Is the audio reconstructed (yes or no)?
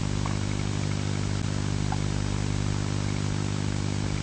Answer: no